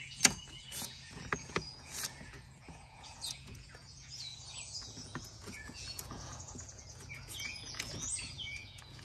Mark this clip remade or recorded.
remade